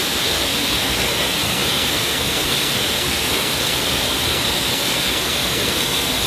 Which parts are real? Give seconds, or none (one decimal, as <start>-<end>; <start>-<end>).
none